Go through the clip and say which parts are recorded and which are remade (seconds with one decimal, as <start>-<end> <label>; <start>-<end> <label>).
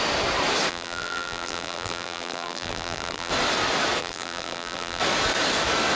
0.0-0.7 recorded; 0.7-3.3 remade; 3.3-4.0 recorded; 4.0-5.0 remade; 5.0-6.0 recorded